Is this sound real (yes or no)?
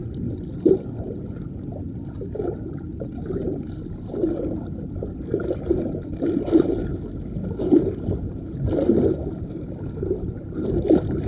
yes